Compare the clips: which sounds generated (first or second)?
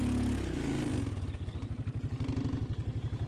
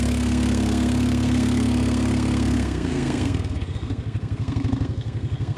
second